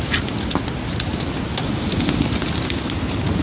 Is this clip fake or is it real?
real